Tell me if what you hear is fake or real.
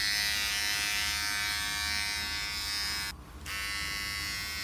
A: real